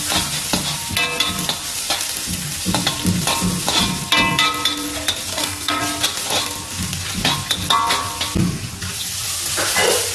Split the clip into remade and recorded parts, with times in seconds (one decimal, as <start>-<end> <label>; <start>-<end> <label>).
0.0-5.3 recorded; 5.3-5.8 remade; 5.8-10.1 recorded